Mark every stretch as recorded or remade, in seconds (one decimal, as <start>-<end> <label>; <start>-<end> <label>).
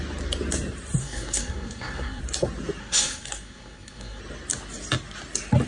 0.0-1.0 recorded; 1.0-2.2 remade; 2.2-2.8 recorded; 2.8-4.2 remade; 4.2-5.7 recorded